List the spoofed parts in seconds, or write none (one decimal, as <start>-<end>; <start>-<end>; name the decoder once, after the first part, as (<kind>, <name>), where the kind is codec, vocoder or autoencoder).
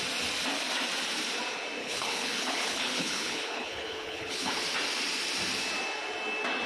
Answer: 1.8-4.6 (codec, HILCodec)